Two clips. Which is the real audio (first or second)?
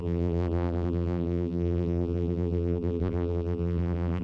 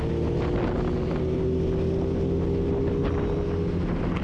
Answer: second